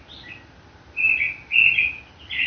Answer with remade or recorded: recorded